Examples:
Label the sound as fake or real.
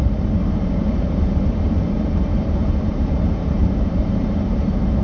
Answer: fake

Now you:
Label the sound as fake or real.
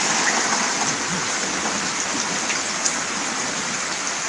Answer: real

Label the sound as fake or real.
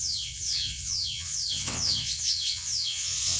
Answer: fake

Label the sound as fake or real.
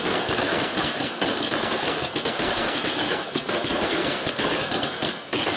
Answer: fake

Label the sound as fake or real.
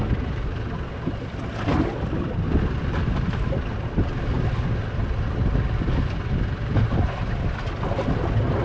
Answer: real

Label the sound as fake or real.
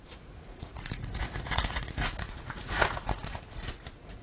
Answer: fake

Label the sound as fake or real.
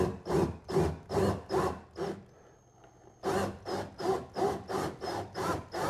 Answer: real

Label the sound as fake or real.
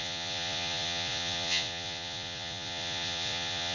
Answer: fake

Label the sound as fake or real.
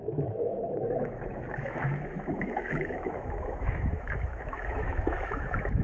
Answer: fake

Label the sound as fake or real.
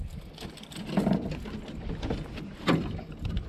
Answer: real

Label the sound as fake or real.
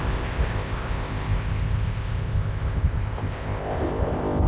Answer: fake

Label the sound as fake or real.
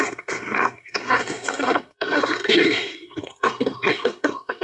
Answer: fake